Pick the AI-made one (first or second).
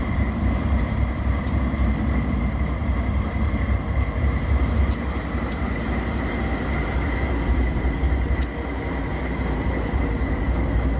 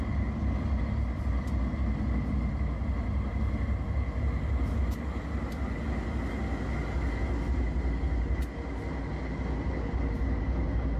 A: first